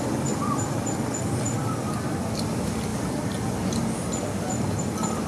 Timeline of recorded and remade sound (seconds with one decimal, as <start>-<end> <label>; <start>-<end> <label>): 0.0-5.3 recorded